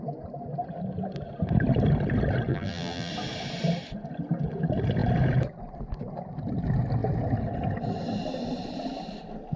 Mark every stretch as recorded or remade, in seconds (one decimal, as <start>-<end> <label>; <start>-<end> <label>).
0.0-2.5 recorded; 2.5-3.1 remade; 3.1-9.6 recorded